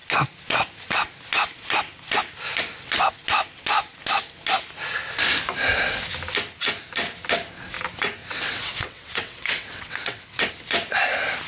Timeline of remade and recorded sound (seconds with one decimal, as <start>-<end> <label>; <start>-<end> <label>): 0.0-8.2 recorded; 8.2-10.5 remade; 10.5-11.5 recorded